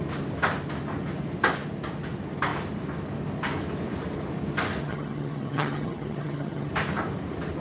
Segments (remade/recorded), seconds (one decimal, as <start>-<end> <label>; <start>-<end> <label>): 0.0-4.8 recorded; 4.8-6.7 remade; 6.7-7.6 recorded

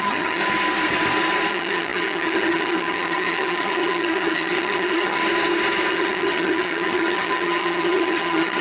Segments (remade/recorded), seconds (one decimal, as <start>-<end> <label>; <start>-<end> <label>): 0.0-0.4 remade; 0.4-1.5 recorded; 1.5-5.2 remade; 5.2-5.9 recorded; 5.9-8.6 remade

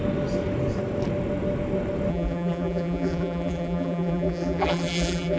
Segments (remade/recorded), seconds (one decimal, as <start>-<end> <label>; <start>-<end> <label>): 0.0-2.1 recorded; 2.1-5.4 remade

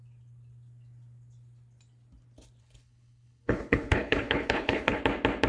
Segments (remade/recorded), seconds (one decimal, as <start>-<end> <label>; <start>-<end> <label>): 0.0-2.6 recorded; 2.6-5.0 remade; 5.0-5.5 recorded

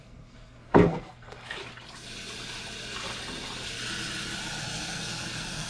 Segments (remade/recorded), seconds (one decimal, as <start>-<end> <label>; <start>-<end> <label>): 0.0-1.6 remade; 1.6-4.6 recorded; 4.6-5.7 remade